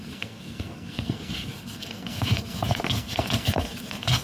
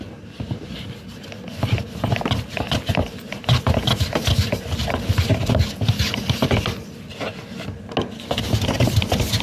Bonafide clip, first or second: second